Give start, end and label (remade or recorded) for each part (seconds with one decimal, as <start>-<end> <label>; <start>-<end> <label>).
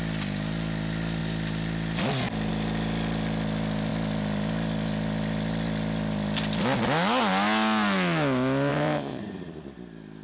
0.0-8.7 recorded; 8.7-9.2 remade; 9.2-10.2 recorded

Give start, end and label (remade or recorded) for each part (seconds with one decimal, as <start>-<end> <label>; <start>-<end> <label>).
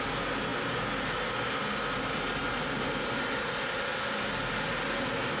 0.0-5.4 recorded